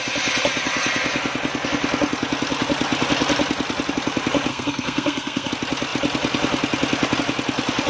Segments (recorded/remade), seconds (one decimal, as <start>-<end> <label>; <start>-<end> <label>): 0.0-4.5 recorded; 4.5-5.5 remade; 5.5-7.9 recorded